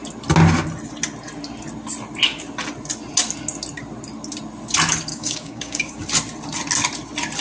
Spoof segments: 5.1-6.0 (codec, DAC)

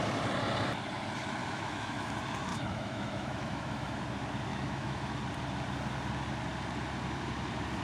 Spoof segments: 1.4-2.1 (autoencoder, DAC-VAE); 2.5-4.0; 4.5-5.2